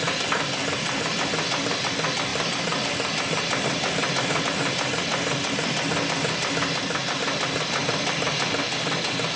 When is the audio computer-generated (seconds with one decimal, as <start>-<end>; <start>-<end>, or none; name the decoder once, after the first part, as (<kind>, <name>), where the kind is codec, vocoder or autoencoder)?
none